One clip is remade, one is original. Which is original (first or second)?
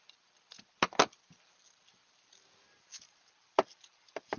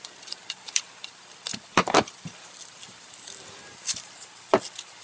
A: first